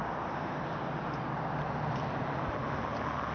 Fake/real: real